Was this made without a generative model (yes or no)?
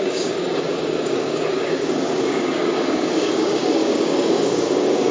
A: no